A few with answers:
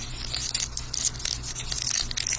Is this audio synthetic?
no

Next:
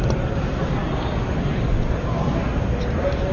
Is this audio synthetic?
no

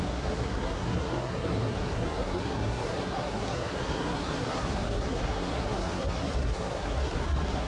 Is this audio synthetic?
yes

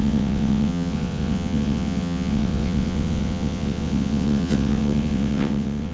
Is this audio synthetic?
yes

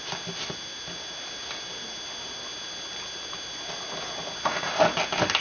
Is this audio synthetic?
no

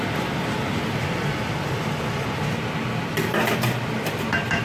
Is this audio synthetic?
no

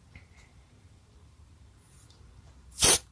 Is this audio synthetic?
yes